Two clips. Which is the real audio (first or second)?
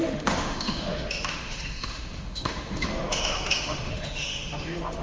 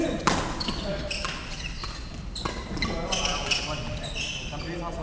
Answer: second